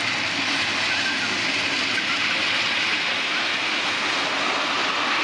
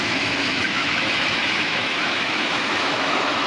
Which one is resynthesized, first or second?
second